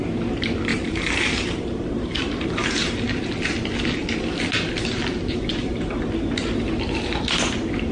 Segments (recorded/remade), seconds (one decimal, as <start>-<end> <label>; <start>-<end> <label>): 0.0-0.7 recorded; 0.7-3.3 remade; 3.3-5.3 recorded; 5.3-6.0 remade; 6.0-7.9 recorded